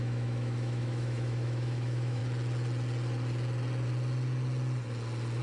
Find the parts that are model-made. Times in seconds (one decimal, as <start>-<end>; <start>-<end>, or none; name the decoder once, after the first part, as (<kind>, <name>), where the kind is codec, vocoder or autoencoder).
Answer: 0.0-2.2 (autoencoder, DAC-VAE)